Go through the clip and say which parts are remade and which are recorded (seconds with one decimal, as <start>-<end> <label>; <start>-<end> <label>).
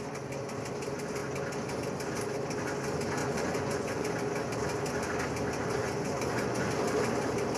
0.0-3.2 recorded; 3.2-4.1 remade; 4.1-5.8 recorded; 5.8-6.7 remade; 6.7-7.6 recorded